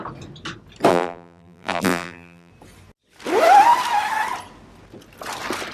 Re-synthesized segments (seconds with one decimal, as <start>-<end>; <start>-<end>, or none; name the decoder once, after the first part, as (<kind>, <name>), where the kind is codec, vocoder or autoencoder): 0.9-2.5 (vocoder, BigVGAN v2)